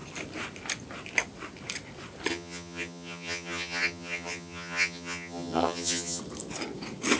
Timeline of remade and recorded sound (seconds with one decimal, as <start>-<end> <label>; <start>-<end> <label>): 0.0-2.3 recorded; 2.3-6.2 remade; 6.2-7.2 recorded